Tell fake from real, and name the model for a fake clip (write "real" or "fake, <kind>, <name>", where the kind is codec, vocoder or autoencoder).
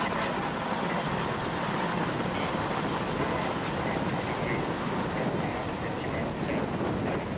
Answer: real